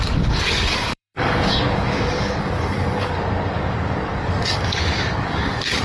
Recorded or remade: remade